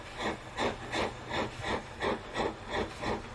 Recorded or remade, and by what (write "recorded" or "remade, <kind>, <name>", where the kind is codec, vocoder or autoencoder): recorded